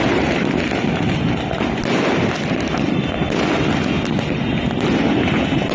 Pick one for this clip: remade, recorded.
recorded